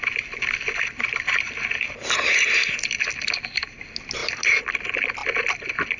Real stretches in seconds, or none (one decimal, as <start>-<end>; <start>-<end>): 0.0-4.2; 4.7-6.0